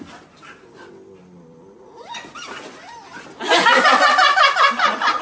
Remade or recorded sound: recorded